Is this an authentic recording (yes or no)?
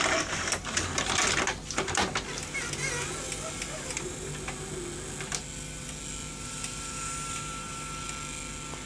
yes